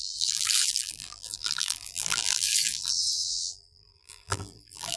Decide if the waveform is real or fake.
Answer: fake